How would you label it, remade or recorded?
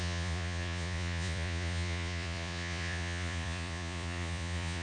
remade